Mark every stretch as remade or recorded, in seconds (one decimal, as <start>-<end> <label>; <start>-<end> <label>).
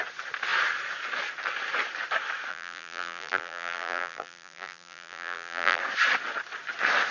0.0-2.5 recorded; 2.5-5.8 remade; 5.8-7.1 recorded